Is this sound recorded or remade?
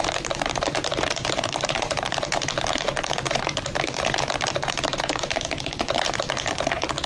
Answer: remade